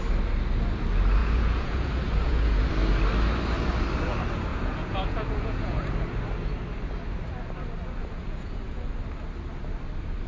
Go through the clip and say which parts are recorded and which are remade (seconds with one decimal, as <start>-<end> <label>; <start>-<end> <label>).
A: 0.0-1.2 recorded; 1.2-2.7 remade; 2.7-4.5 recorded; 4.5-5.9 remade; 5.9-8.0 recorded; 8.0-8.9 remade; 8.9-10.3 recorded

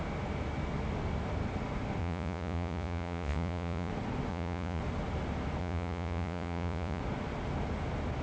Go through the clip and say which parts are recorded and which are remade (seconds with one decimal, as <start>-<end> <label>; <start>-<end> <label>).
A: 0.0-2.0 recorded; 2.0-3.9 remade; 3.9-4.3 recorded; 4.3-4.8 remade; 4.8-5.6 recorded; 5.6-7.0 remade; 7.0-8.2 recorded

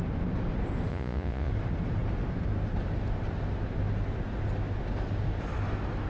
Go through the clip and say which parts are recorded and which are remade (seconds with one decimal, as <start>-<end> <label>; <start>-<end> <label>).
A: 0.0-0.9 recorded; 0.9-1.5 remade; 1.5-6.1 recorded

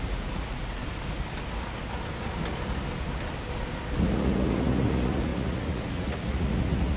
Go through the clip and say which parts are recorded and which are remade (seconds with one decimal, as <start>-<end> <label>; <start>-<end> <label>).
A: 0.0-0.8 remade; 0.8-4.0 recorded; 4.0-7.0 remade

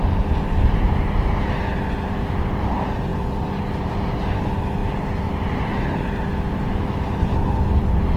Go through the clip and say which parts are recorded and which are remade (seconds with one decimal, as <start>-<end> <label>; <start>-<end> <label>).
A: 0.0-8.2 recorded

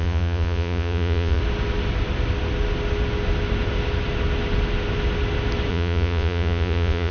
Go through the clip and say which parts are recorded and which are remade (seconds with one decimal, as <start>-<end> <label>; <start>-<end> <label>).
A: 0.0-1.4 remade; 1.4-5.7 recorded; 5.7-7.1 remade

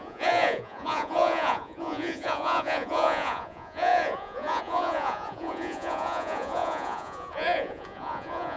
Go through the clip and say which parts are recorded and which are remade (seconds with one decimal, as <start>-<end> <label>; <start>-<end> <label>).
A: 0.0-8.6 remade